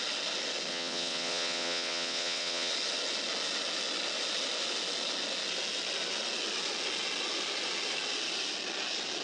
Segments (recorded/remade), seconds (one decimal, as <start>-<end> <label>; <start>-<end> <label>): 0.0-0.7 recorded; 0.7-2.7 remade; 2.7-9.2 recorded